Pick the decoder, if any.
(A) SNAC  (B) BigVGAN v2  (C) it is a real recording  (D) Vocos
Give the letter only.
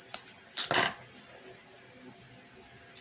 C